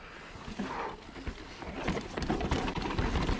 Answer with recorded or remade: recorded